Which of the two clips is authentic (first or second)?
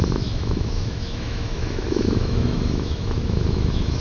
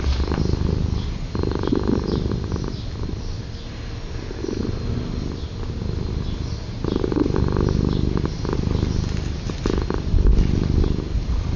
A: second